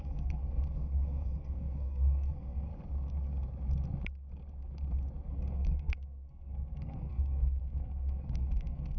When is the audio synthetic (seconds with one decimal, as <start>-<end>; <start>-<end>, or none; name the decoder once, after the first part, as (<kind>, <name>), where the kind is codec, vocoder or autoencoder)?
0.0-2.7 (codec, SNAC); 5.3-9.0